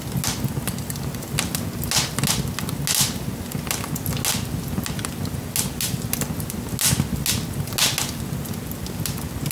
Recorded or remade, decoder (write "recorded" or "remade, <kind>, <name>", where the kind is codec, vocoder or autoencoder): recorded